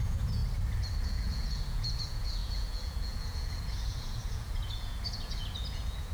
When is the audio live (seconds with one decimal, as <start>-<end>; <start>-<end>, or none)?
0.4-1.0